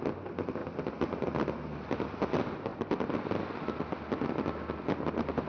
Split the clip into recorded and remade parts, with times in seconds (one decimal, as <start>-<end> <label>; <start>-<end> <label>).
0.0-5.5 recorded